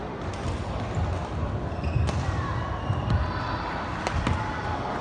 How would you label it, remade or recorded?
recorded